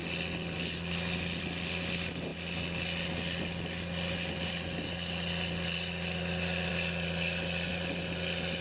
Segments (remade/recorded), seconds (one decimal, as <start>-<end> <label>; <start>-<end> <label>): 0.0-8.6 recorded